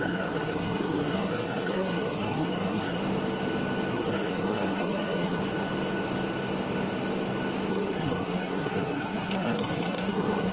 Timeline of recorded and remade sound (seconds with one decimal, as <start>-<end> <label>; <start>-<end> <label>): 0.0-3.0 remade; 3.0-3.9 recorded; 3.9-5.4 remade; 5.4-7.7 recorded; 7.7-10.5 remade